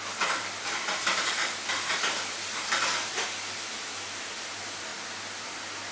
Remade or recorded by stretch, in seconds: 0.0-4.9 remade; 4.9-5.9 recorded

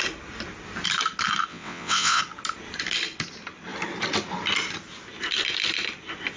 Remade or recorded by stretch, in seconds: 0.0-1.5 recorded; 1.5-2.2 remade; 2.2-6.4 recorded

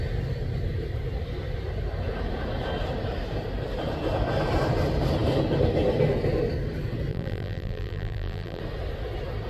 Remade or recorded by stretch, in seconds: 0.0-7.1 recorded; 7.1-8.6 remade; 8.6-9.5 recorded

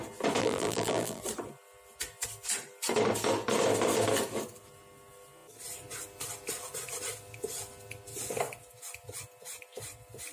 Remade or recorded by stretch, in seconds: 0.0-0.4 recorded; 0.4-1.2 remade; 1.2-10.3 recorded